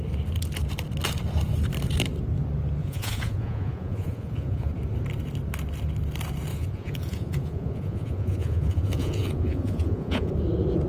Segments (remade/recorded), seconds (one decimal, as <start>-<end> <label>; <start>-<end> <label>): 0.0-2.8 recorded; 2.8-4.7 remade; 4.7-6.5 recorded; 6.5-10.3 remade; 10.3-10.9 recorded